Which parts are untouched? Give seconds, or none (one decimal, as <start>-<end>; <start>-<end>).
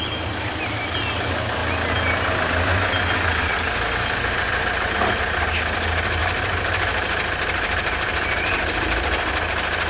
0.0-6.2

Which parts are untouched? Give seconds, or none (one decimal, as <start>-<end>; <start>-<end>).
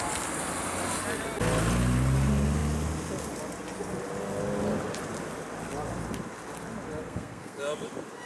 0.0-7.0; 7.6-8.3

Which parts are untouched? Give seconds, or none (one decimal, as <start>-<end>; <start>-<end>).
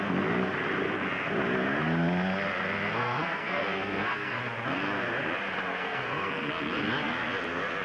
0.0-2.9; 4.4-5.7; 6.5-7.8